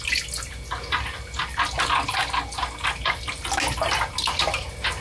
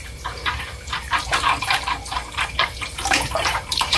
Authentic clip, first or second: first